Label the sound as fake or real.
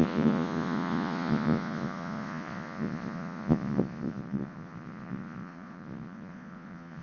fake